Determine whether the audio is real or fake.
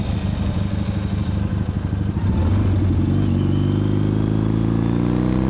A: real